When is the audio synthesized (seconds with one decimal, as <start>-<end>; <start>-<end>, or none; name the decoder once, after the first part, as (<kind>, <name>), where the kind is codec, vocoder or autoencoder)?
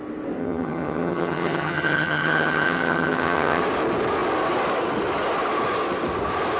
0.4-3.6 (vocoder, HiFi-GAN)